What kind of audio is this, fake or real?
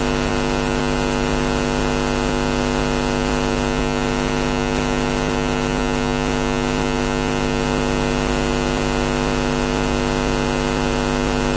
real